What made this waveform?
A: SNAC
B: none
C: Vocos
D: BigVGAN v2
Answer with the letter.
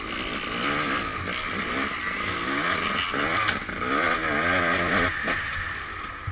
B